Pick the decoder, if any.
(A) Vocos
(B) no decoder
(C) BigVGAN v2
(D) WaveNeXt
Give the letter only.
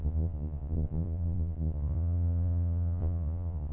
A